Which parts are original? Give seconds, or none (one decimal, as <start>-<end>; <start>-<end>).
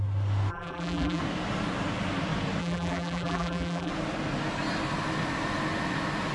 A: 0.0-0.5; 1.2-2.6; 3.9-6.3